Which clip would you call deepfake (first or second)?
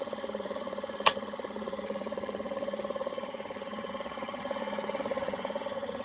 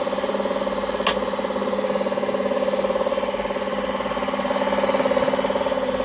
first